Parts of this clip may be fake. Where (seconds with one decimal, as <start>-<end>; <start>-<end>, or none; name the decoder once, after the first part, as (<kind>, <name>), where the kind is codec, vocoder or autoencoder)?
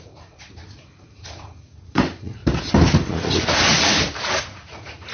0.0-2.4 (vocoder, Vocos); 4.4-5.1